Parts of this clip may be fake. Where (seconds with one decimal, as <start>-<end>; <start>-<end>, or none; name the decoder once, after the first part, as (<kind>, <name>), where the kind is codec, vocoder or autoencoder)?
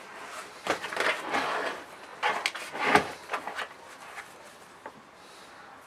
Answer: none